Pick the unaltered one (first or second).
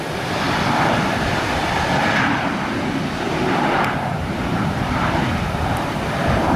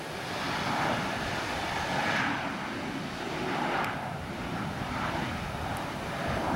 second